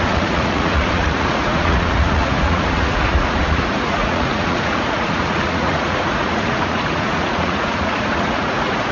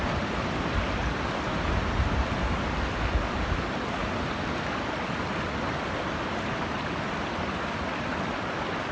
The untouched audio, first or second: second